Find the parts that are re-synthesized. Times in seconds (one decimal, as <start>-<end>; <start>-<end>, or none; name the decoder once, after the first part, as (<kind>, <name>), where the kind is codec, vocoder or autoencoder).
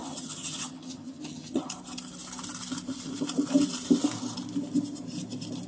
0.0-1.7 (vocoder, HiFi-GAN)